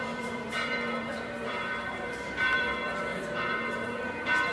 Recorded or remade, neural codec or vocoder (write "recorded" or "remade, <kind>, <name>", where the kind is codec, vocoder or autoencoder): remade, vocoder, BigVGAN v2